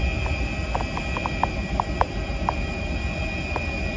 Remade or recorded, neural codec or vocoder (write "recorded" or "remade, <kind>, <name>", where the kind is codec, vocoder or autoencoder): recorded